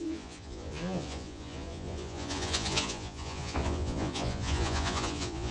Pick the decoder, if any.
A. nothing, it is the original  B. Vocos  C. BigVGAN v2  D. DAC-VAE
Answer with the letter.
B